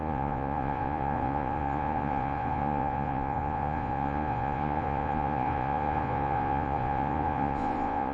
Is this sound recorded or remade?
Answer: remade